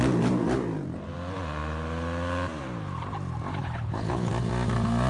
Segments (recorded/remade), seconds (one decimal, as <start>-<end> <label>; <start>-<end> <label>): 0.0-3.6 recorded; 3.6-4.3 remade; 4.3-5.1 recorded